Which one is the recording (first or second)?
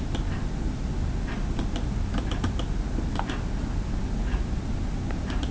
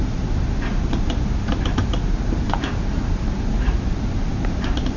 first